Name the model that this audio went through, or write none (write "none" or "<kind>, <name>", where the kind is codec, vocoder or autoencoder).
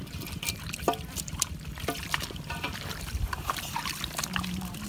vocoder, BigVGAN v2